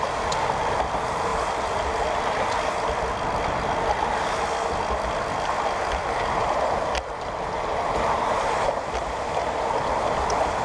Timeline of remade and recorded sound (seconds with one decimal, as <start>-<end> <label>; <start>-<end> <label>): 0.0-10.6 recorded